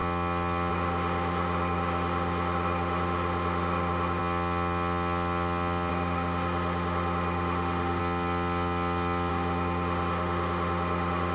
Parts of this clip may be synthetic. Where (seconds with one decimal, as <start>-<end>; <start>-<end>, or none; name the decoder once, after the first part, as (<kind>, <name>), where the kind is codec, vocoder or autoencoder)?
0.7-4.2 (autoencoder, DAC-VAE); 5.9-8.0; 9.3-11.3